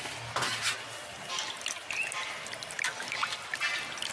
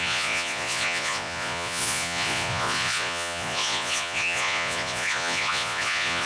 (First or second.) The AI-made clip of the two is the second